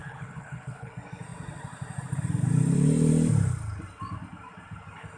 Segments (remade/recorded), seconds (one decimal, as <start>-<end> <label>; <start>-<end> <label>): 0.0-0.9 remade; 0.9-5.2 recorded

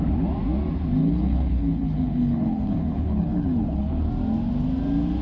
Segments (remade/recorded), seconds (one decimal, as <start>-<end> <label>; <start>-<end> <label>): 0.0-1.0 recorded; 1.0-4.1 remade; 4.1-5.2 recorded

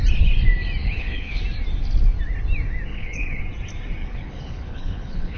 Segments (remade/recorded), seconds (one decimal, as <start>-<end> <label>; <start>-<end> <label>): 0.0-0.8 recorded; 0.8-1.4 remade; 1.4-2.9 recorded; 2.9-3.4 remade; 3.4-4.0 recorded; 4.0-5.4 remade

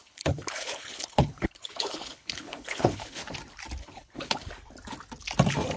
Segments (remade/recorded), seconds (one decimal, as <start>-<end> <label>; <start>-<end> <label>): 0.0-3.2 remade; 3.2-3.8 recorded; 3.8-4.5 remade; 4.5-5.8 recorded

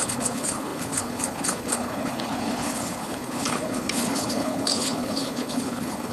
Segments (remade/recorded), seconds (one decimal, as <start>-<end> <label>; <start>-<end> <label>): 0.0-6.1 remade

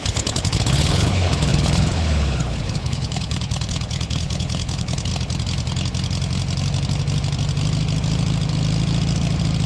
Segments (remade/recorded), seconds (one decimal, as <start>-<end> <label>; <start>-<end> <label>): 0.0-5.1 remade; 5.1-9.7 recorded

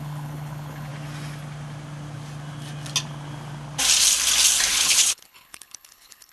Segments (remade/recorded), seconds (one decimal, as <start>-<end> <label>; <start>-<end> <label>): 0.0-0.9 remade; 0.9-4.7 recorded; 4.7-6.3 remade

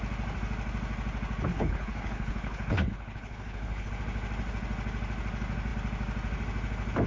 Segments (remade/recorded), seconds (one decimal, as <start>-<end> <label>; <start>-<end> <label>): 0.0-1.5 recorded; 1.5-3.9 remade; 3.9-7.1 recorded